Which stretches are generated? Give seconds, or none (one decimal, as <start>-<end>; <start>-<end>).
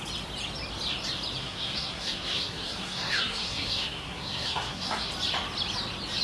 1.4-5.1